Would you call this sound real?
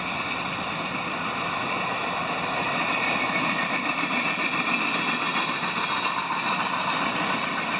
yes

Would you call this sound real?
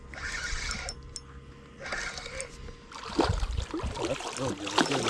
yes